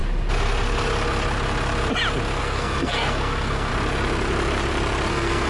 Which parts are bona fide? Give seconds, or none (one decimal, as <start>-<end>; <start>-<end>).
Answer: 0.0-2.4; 3.7-5.1